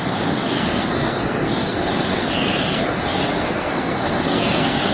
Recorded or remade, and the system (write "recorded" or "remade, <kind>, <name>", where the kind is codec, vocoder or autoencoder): remade, codec, SNAC